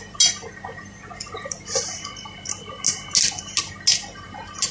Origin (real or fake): real